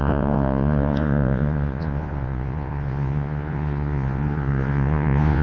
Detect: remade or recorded remade